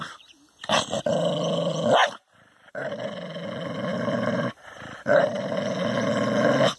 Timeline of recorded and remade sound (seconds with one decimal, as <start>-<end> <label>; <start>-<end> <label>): 0.0-2.0 recorded; 2.0-2.9 remade; 2.9-3.9 recorded; 3.9-4.5 remade; 4.5-6.8 recorded